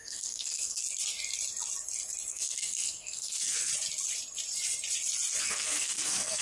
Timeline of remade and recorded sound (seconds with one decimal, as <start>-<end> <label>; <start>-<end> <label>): 0.0-0.8 remade; 0.8-2.3 recorded; 2.3-3.7 remade; 3.7-5.4 recorded; 5.4-6.4 remade